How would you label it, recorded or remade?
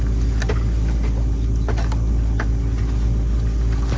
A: recorded